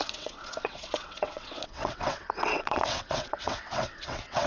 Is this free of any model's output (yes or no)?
no